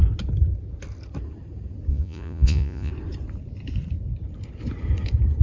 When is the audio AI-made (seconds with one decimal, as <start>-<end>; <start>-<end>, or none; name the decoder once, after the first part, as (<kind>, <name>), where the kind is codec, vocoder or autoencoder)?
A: 1.9-2.9 (vocoder, Vocos)